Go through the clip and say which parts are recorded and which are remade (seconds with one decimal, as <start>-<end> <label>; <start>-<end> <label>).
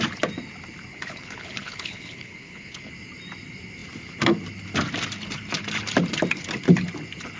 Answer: 0.0-0.9 recorded; 0.9-2.9 remade; 2.9-7.4 recorded